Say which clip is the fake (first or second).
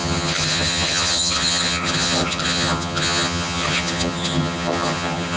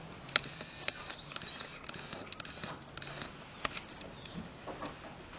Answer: first